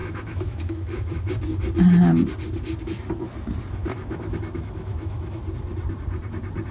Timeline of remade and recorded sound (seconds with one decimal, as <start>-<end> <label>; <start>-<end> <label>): 0.0-1.3 remade; 1.3-3.8 recorded; 3.8-5.4 remade; 5.4-6.7 recorded